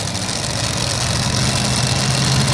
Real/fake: real